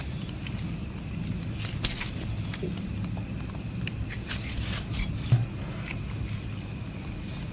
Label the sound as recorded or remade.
recorded